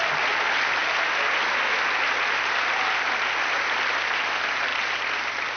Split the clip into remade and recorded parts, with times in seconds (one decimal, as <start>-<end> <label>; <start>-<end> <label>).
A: 0.0-5.6 recorded